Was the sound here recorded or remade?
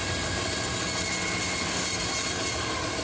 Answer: recorded